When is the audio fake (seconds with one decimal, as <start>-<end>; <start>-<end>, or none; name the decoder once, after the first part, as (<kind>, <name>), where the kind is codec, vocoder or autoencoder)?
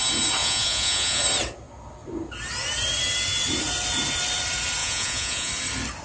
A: 0.4-1.2 (vocoder, Vocos); 4.8-5.5